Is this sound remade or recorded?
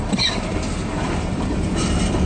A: recorded